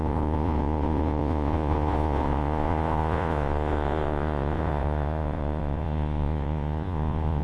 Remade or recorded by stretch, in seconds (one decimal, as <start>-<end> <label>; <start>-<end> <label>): 0.0-7.4 remade